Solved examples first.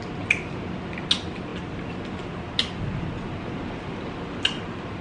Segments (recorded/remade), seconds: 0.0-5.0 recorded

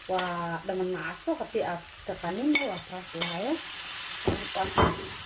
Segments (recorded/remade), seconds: 0.0-2.9 recorded; 2.9-4.6 remade; 4.6-5.3 recorded

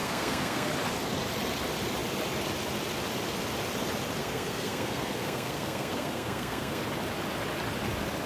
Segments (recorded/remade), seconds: 0.0-0.7 remade; 0.7-4.2 recorded; 4.2-6.8 remade; 6.8-8.3 recorded